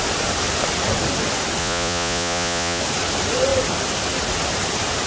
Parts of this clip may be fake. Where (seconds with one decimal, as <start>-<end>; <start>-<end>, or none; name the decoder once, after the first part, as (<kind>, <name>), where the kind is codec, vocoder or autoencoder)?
1.6-2.8 (vocoder, Vocos)